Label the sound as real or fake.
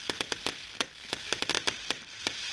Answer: real